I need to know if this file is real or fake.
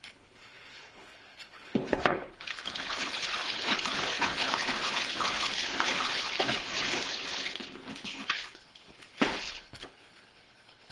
fake